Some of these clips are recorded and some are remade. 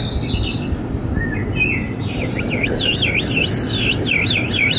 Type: recorded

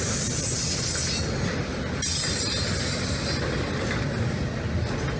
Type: recorded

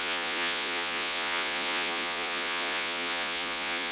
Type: remade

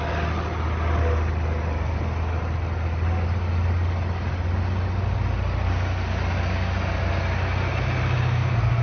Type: recorded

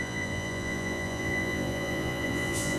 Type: remade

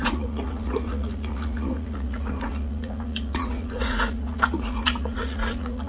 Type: remade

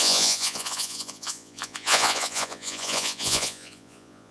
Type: remade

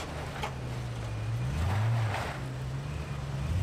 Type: recorded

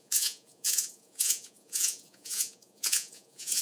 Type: remade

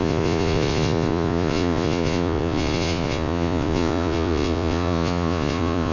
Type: remade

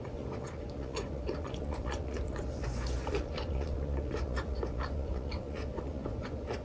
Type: remade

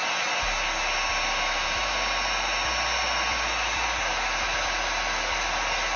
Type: recorded